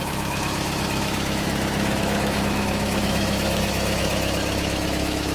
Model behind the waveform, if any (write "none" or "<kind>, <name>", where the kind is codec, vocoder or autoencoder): autoencoder, DAC-VAE